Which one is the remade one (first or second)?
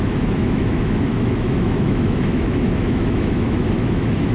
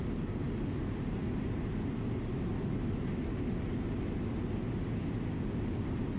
first